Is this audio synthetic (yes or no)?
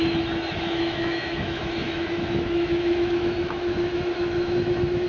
yes